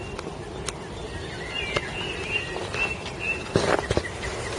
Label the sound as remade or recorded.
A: recorded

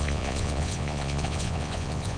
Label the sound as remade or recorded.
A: remade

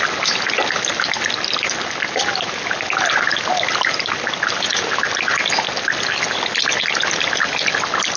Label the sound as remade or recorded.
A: recorded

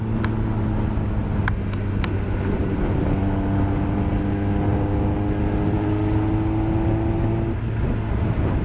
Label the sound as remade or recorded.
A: recorded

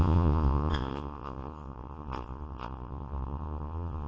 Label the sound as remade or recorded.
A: remade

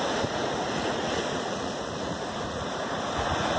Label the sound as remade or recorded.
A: remade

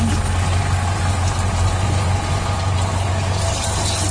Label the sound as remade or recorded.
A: recorded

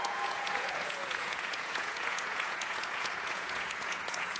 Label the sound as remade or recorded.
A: remade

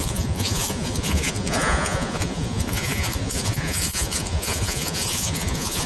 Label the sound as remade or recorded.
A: remade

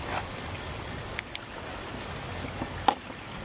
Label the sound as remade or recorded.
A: recorded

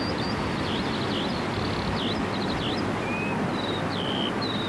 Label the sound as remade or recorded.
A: recorded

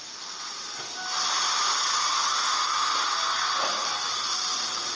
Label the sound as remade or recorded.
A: recorded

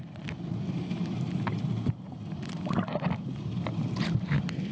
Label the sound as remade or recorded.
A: recorded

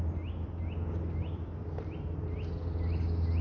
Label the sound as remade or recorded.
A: recorded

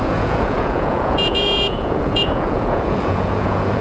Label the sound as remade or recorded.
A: remade